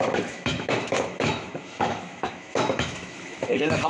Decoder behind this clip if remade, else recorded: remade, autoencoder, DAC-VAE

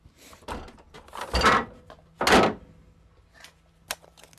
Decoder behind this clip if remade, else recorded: recorded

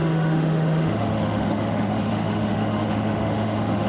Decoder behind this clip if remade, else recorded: remade, autoencoder, DAC-VAE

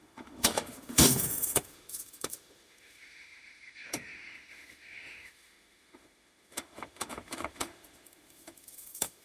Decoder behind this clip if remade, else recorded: remade, autoencoder, DAC-VAE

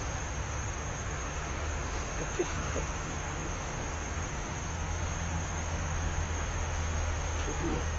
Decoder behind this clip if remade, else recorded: remade, autoencoder, DAC-VAE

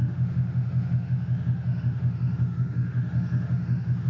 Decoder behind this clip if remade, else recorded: remade, autoencoder, DAC-VAE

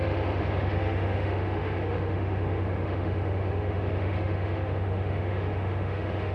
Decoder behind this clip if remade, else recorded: remade, autoencoder, DAC-VAE